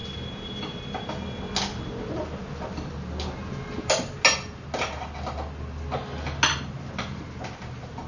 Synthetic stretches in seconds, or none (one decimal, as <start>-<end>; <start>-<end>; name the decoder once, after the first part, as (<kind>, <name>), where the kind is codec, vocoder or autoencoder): none